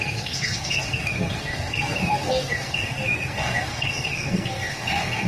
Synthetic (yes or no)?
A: yes